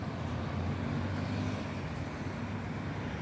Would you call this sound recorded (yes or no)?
yes